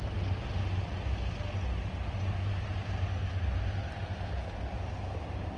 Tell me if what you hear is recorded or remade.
recorded